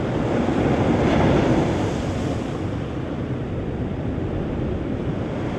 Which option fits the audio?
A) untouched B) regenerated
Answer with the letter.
A